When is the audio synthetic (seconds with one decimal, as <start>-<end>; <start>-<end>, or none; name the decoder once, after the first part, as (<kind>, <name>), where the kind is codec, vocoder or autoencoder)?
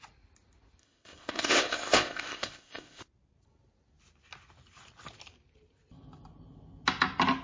0.8-3.0 (codec, ZipCodec)